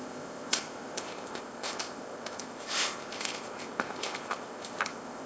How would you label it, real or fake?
fake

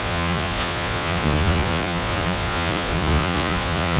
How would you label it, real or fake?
fake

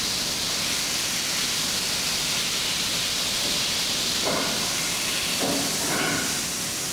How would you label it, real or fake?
real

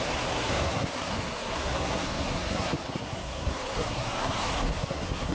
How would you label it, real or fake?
fake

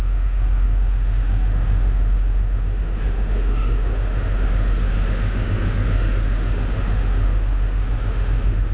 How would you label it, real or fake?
fake